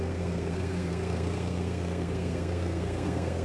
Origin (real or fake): fake